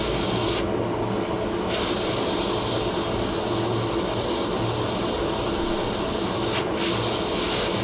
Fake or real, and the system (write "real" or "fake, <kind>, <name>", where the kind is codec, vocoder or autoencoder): real